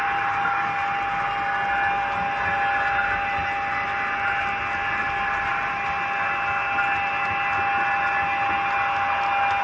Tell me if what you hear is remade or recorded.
recorded